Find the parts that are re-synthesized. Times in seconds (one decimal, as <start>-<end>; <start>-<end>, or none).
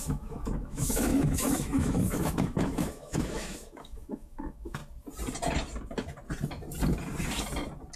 0.0-4.8